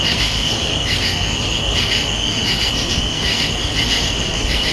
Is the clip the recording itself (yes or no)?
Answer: no